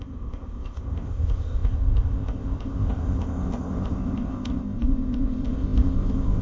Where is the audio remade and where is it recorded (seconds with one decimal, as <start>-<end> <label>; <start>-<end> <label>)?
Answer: 0.0-6.4 remade